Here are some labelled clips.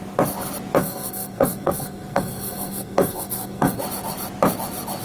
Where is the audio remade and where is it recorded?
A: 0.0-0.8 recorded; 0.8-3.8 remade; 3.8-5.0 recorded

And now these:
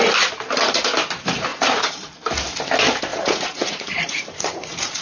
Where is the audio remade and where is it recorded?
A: 0.0-1.5 recorded; 1.5-2.2 remade; 2.2-3.1 recorded; 3.1-5.0 remade

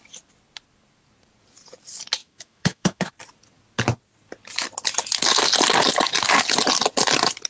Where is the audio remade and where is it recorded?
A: 0.0-2.2 recorded; 2.2-3.1 remade; 3.1-7.5 recorded

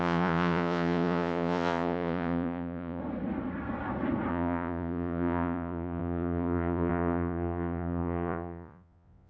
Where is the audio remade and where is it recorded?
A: 0.0-3.0 remade; 3.0-4.3 recorded; 4.3-9.3 remade